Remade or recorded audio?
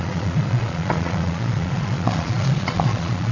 remade